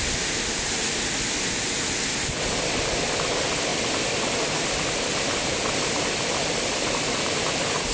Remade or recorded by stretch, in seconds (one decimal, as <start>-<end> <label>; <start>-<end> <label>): 0.0-7.9 recorded

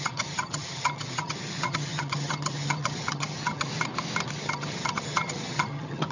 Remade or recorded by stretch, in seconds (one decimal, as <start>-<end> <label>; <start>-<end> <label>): 0.0-3.7 remade; 3.7-4.3 recorded; 4.3-6.1 remade

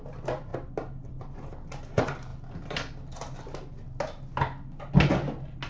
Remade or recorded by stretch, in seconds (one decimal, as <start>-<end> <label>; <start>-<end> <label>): 0.0-5.7 recorded

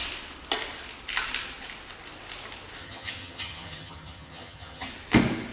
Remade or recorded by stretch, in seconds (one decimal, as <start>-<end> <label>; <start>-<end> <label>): 0.0-2.8 recorded; 2.8-4.9 remade; 4.9-5.5 recorded